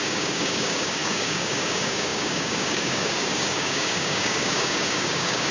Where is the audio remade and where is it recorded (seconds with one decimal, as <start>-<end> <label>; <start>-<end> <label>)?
0.0-5.5 remade

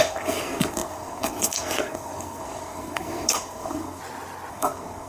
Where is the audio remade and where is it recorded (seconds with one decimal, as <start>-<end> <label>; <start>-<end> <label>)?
0.0-4.0 remade; 4.0-4.5 recorded; 4.5-5.1 remade

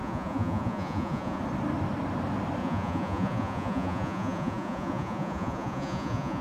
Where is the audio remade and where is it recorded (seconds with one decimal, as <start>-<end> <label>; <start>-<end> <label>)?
0.0-1.4 remade; 1.4-2.6 recorded; 2.6-6.4 remade

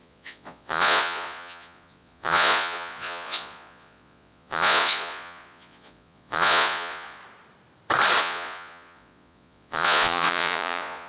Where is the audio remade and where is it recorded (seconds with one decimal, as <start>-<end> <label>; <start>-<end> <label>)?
0.0-7.2 remade; 7.2-8.2 recorded; 8.2-11.1 remade